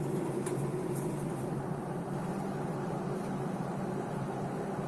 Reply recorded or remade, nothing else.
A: recorded